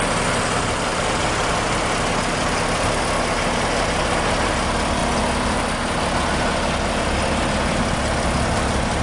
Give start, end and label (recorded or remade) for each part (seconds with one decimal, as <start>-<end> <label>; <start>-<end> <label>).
0.0-0.9 recorded; 0.9-3.0 remade; 3.0-9.0 recorded